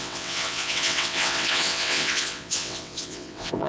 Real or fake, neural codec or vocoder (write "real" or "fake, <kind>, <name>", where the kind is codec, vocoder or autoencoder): fake, vocoder, WaveNeXt